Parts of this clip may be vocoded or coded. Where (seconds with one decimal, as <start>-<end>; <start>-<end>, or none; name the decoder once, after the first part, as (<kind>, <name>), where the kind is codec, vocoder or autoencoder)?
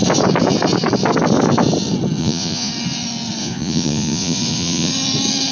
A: 2.2-2.7 (vocoder, Vocos); 3.4-4.9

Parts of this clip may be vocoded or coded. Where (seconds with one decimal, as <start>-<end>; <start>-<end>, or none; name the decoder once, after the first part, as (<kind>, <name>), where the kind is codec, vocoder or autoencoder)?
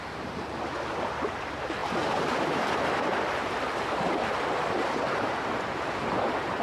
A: 0.0-6.6 (vocoder, BigVGAN v2)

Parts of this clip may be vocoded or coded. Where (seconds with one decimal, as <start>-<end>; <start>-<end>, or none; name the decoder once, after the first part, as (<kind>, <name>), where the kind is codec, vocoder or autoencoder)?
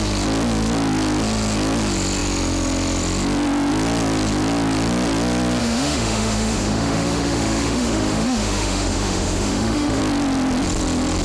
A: 5.6-10.0 (autoencoder, DAC-VAE)